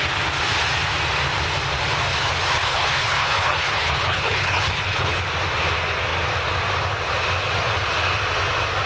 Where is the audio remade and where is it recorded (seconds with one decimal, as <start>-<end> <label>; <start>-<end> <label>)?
0.0-2.1 recorded; 2.1-5.2 remade; 5.2-8.9 recorded

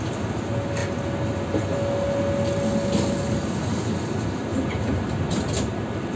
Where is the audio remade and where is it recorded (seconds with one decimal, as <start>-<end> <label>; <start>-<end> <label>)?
0.0-6.2 recorded

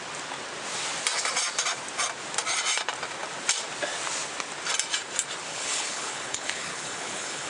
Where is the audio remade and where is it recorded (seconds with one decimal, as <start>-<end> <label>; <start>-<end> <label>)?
0.0-5.5 recorded; 5.5-7.5 remade